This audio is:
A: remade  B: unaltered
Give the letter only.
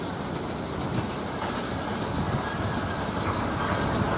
B